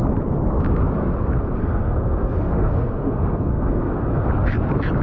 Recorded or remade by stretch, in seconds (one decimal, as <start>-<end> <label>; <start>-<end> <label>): 0.0-1.6 recorded; 1.6-4.3 remade; 4.3-5.0 recorded